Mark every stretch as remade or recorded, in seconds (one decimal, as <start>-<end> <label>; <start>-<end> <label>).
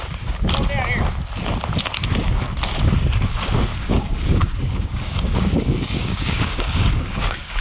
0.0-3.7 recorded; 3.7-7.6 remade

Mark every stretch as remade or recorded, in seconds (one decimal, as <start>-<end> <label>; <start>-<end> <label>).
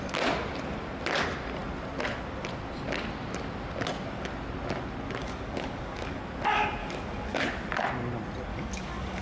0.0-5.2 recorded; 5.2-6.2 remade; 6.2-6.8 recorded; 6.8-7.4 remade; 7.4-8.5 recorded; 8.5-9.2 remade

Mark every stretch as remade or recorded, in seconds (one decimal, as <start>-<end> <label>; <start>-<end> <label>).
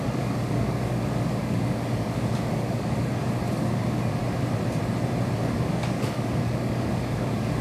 0.0-4.2 remade; 4.2-5.4 recorded; 5.4-7.6 remade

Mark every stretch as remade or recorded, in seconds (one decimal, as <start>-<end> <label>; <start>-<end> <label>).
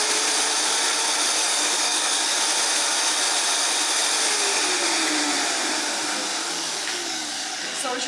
0.0-1.4 recorded; 1.4-2.4 remade; 2.4-6.4 recorded; 6.4-7.6 remade; 7.6-8.1 recorded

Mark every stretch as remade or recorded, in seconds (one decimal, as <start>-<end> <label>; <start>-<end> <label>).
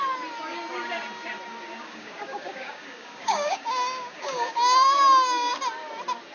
0.0-1.7 recorded; 1.7-5.5 remade; 5.5-6.3 recorded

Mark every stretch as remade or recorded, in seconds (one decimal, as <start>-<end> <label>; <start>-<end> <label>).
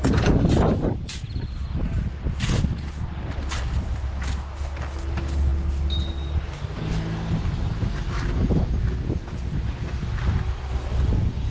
0.0-11.5 recorded